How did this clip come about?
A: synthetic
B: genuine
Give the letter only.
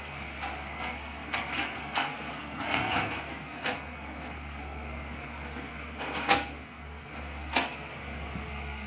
A